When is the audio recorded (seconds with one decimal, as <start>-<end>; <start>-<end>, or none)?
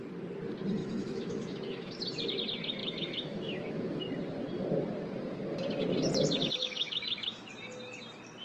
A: 0.0-0.8; 2.0-2.8; 4.0-6.6; 7.5-8.4